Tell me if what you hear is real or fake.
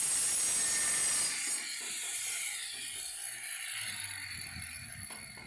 real